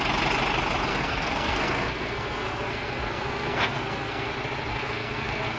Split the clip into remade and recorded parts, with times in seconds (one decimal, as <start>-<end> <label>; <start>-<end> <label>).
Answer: 0.0-0.9 recorded; 0.9-4.3 remade; 4.3-4.7 recorded; 4.7-5.6 remade